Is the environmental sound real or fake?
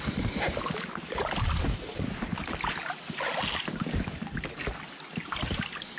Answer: real